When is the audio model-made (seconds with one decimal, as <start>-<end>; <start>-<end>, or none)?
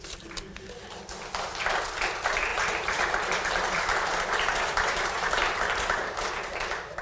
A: 2.5-6.6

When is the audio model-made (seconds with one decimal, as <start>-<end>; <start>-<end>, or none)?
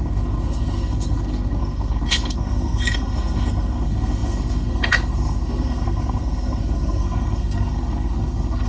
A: 0.0-8.7